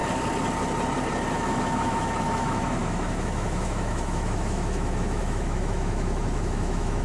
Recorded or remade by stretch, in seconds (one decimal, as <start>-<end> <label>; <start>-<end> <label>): 0.0-1.3 recorded; 1.3-7.0 remade